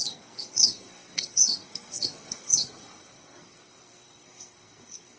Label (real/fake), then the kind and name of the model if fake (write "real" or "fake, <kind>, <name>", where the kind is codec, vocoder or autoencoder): fake, codec, SNAC